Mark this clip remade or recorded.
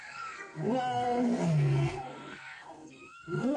remade